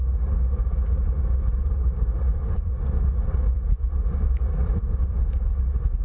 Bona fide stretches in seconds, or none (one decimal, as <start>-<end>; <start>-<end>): 0.0-1.6; 5.2-6.0